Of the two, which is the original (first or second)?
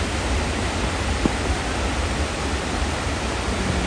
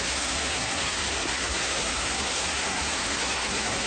first